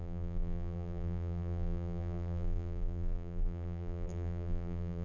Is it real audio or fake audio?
fake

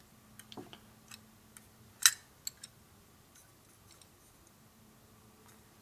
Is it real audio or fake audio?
real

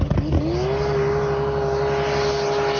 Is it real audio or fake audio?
real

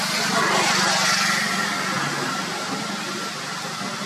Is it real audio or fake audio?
real